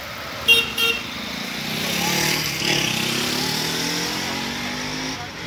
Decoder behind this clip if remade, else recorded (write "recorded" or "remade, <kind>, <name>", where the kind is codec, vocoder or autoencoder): recorded